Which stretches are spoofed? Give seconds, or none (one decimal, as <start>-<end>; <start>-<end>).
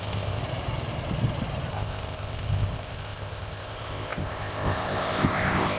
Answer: 0.0-0.4; 1.7-5.8